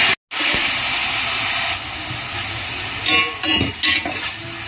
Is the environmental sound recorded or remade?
recorded